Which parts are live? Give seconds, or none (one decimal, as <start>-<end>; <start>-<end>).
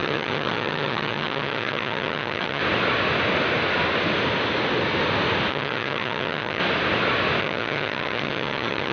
2.6-5.5; 6.6-7.4